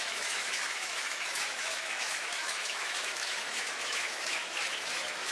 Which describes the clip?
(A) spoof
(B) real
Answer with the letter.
A